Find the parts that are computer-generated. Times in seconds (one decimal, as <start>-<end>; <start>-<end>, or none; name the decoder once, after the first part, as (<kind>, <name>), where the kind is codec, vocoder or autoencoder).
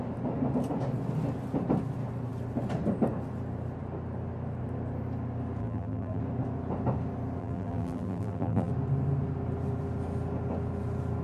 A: 5.6-6.2 (vocoder, BigVGAN v2); 7.4-8.7